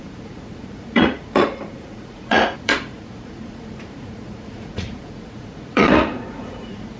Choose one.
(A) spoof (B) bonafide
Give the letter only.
A